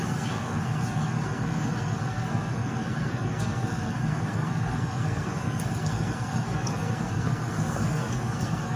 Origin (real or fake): fake